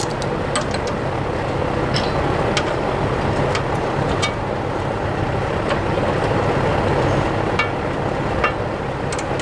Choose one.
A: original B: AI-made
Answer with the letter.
A